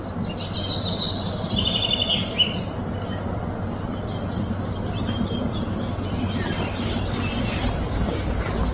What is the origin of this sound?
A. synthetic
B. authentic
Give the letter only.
B